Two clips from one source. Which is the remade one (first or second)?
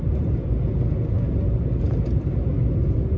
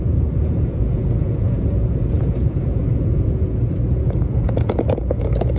second